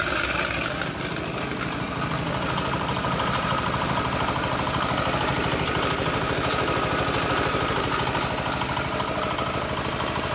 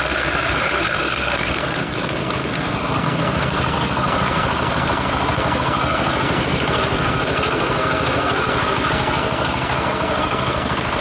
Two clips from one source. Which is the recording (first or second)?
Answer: first